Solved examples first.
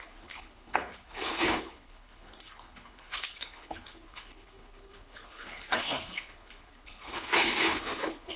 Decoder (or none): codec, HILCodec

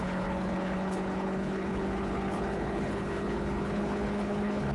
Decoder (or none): codec, HILCodec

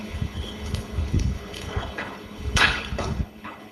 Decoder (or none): codec, HILCodec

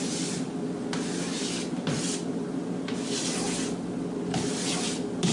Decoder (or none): none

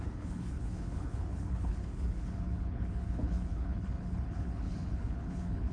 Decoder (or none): codec, HILCodec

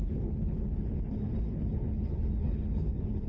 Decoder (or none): codec, HILCodec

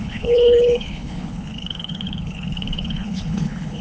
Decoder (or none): codec, HILCodec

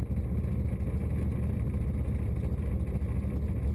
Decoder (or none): none